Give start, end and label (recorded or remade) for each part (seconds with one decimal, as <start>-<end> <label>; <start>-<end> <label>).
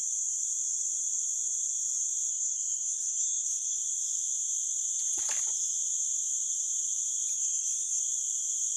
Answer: 0.0-2.3 recorded; 2.3-3.8 remade; 3.8-7.3 recorded; 7.3-8.0 remade; 8.0-8.8 recorded